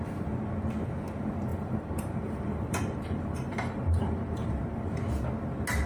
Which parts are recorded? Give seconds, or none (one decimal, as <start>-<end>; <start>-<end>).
0.0-1.5; 5.0-5.9